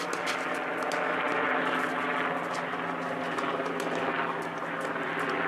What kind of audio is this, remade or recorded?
recorded